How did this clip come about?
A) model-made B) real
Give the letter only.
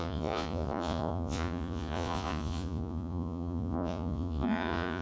A